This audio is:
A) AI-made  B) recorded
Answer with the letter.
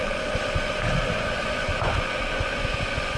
A